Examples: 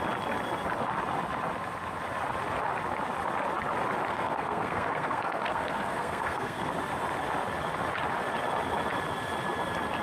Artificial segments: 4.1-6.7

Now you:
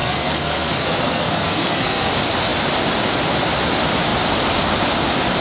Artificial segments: 0.0-2.1

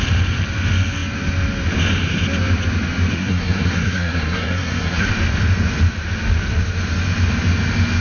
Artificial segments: 3.1-5.1

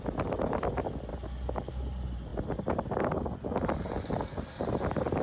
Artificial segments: none

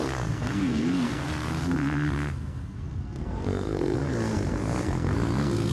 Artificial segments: 0.0-5.7

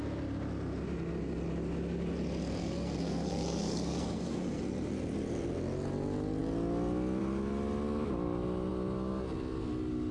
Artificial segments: 2.6-4.6

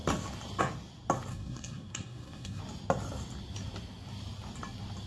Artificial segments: 1.3-2.6